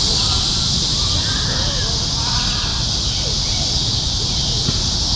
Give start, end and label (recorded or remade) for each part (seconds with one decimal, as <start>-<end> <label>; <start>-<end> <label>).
0.0-5.2 recorded